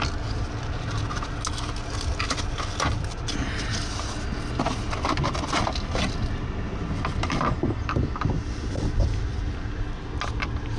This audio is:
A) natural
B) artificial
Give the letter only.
A